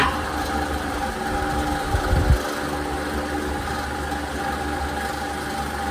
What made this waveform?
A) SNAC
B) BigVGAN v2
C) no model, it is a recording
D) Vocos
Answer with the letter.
C